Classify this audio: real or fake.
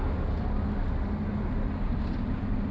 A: real